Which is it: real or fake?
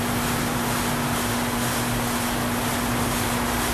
real